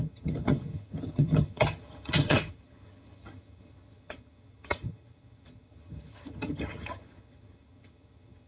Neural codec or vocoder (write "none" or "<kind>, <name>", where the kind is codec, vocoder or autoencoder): vocoder, HiFi-GAN